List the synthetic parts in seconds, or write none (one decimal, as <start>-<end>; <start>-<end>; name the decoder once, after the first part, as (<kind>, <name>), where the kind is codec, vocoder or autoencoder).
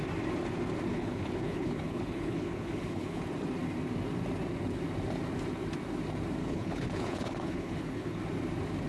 0.9-3.2 (codec, HILCodec); 6.4-8.2